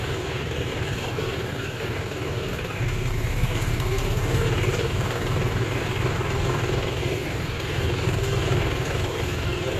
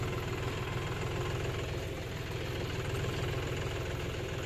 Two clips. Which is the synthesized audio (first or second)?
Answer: first